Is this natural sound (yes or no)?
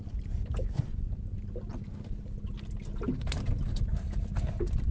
yes